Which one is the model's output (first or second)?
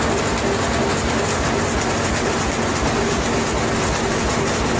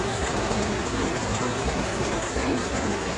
second